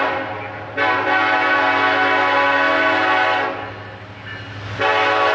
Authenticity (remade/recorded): recorded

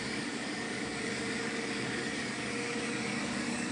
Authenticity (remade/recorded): remade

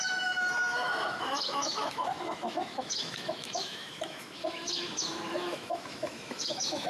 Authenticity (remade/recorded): remade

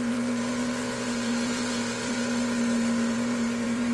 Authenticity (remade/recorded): remade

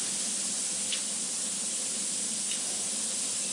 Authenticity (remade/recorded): recorded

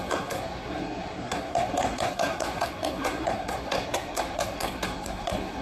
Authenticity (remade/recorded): remade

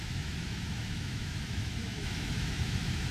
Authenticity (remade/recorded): remade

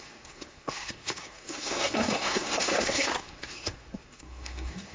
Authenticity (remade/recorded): remade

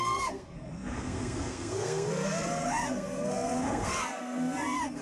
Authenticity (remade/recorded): remade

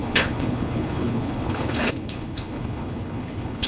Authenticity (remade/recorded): remade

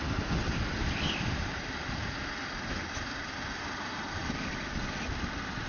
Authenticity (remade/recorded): recorded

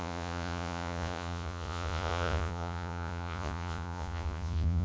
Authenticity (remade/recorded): remade